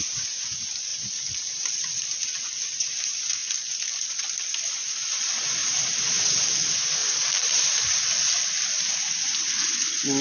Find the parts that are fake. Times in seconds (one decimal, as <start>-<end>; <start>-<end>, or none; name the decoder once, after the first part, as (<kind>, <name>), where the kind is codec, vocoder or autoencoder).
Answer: 0.9-2.0 (vocoder, BigVGAN v2); 5.6-6.4; 7.0-7.6